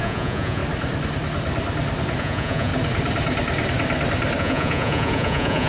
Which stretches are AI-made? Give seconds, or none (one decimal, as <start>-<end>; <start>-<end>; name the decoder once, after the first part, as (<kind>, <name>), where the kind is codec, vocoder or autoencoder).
0.0-0.6 (vocoder, Vocos); 2.2-2.7; 4.4-5.7